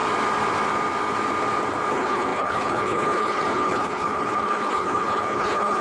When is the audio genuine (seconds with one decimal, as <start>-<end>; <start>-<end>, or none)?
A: 0.0-1.9